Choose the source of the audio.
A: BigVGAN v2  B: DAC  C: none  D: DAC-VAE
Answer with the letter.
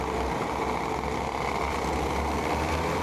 C